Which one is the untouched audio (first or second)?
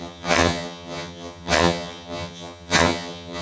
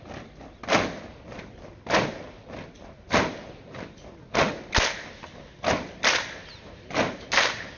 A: second